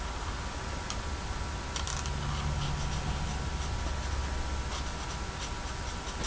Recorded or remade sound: recorded